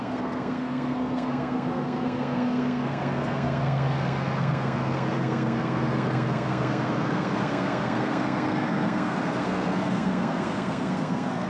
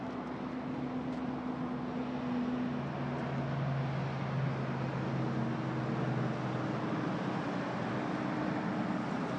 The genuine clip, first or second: second